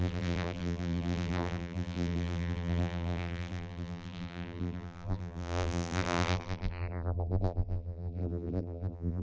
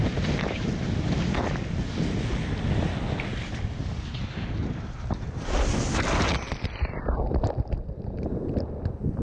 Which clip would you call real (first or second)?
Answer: second